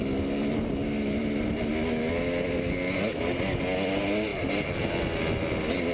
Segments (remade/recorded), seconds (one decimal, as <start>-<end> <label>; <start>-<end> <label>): 0.0-1.2 recorded; 1.2-1.7 remade; 1.7-4.3 recorded; 4.3-4.9 remade; 4.9-5.9 recorded